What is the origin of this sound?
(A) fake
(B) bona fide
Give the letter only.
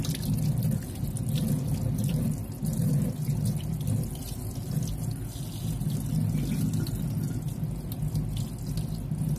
B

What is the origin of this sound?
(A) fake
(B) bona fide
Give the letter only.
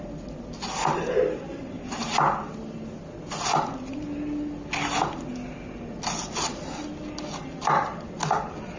B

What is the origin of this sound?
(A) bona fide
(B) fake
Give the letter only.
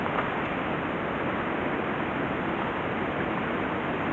A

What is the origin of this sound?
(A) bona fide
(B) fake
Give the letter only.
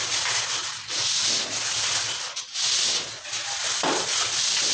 A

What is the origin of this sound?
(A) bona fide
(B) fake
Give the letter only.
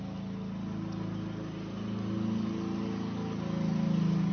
A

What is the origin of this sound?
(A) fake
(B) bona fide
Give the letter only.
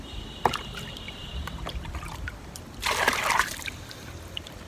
A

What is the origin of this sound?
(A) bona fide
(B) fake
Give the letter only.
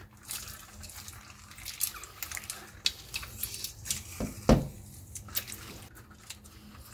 A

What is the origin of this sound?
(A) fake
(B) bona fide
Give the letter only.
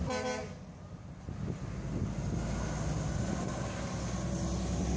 B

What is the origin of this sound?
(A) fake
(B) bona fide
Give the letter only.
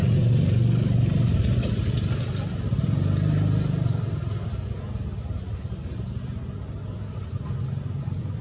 B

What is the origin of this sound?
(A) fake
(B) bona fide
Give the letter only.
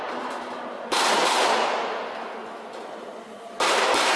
B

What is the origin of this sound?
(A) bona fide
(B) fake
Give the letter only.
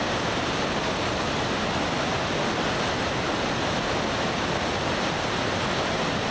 A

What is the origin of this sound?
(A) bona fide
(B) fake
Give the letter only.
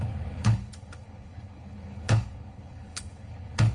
B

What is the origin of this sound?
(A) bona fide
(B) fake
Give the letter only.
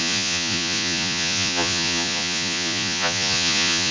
B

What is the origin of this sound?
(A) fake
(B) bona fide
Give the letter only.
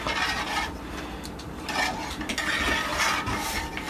B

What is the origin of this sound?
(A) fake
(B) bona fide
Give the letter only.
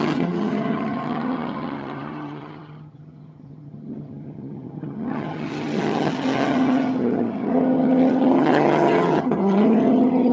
A